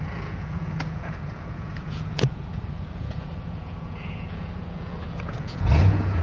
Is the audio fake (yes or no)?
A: yes